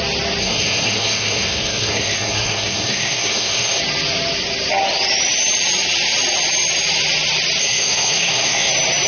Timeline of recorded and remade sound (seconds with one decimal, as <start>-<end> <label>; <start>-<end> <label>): 0.0-0.4 recorded; 0.4-3.8 remade; 3.8-7.6 recorded; 7.6-8.7 remade; 8.7-9.1 recorded